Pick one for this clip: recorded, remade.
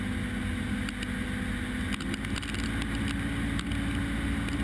recorded